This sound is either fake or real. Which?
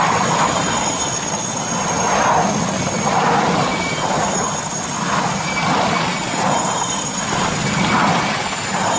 real